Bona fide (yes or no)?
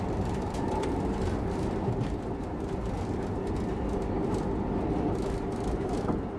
yes